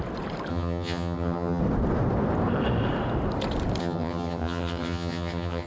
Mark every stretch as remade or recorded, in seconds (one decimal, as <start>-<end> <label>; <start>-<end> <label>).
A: 0.0-0.5 recorded; 0.5-1.6 remade; 1.6-3.8 recorded; 3.8-5.7 remade